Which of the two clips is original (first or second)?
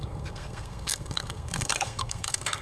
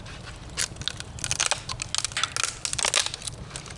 second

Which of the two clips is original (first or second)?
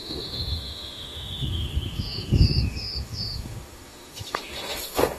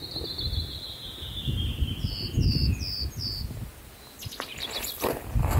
second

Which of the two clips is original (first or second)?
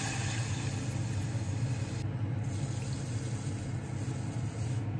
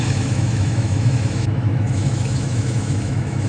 first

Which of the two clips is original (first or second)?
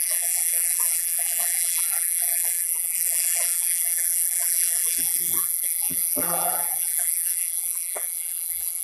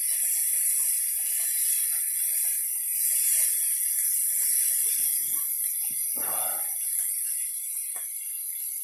second